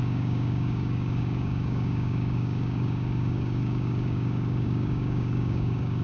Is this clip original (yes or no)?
no